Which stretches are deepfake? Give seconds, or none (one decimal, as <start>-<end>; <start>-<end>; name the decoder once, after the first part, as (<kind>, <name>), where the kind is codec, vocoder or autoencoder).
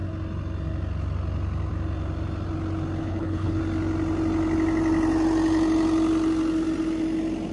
3.0-3.6 (codec, HILCodec)